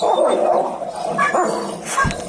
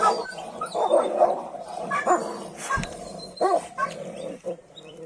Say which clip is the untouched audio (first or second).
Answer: first